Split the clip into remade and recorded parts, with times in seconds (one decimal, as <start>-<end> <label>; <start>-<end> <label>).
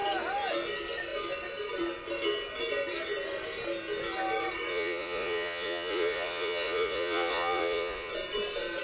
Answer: 0.0-4.7 recorded; 4.7-8.1 remade; 8.1-8.8 recorded